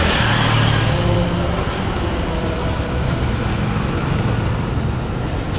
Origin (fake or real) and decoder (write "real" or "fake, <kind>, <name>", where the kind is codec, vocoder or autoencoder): real